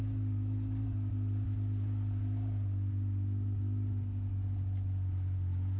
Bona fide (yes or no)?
yes